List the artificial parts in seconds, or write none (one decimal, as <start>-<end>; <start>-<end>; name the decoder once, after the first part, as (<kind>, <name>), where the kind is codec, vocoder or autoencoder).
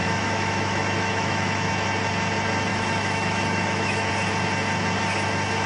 0.0-1.7 (autoencoder, DAC-VAE); 2.7-4.1